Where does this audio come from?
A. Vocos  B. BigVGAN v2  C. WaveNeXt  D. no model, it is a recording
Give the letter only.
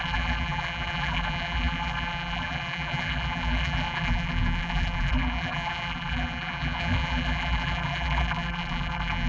B